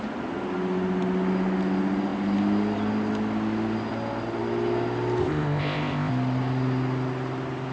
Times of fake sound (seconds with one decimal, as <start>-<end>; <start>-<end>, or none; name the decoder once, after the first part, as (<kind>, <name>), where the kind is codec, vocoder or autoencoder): 5.2-6.1 (codec, ZipCodec)